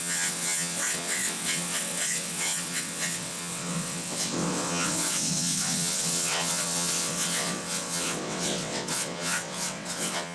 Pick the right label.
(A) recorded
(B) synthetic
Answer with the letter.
B